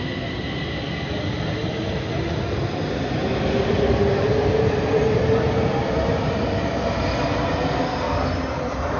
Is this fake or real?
real